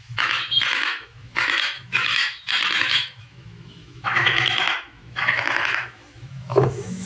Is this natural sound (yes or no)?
no